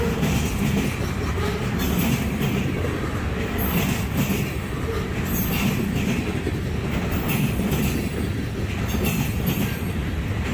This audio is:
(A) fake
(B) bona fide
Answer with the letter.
B